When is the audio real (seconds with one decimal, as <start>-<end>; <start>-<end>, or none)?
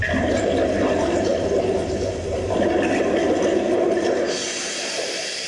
0.0-5.5